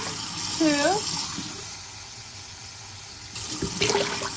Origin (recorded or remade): recorded